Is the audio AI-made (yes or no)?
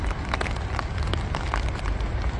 no